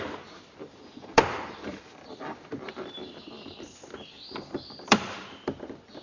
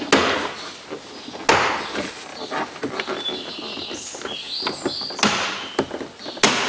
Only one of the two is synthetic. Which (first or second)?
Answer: first